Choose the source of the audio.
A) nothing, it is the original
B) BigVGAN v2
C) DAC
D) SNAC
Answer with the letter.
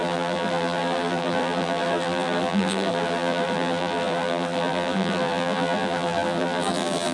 B